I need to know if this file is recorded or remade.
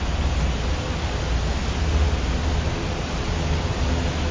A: recorded